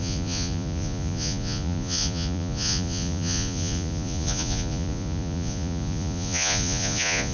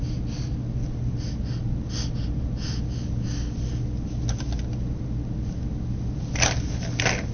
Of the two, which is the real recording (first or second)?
second